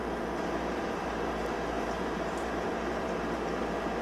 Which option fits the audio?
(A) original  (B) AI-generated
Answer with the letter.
B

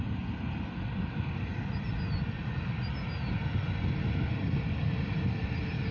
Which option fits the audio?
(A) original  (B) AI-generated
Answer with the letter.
A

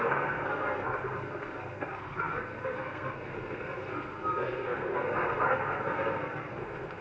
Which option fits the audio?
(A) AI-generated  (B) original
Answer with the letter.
A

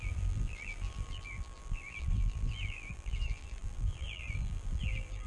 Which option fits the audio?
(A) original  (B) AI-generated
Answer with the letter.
B